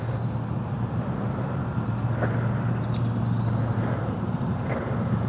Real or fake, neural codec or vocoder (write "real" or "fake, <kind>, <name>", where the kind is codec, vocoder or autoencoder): real